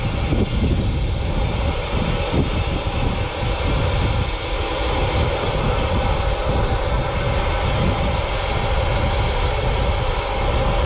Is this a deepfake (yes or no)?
no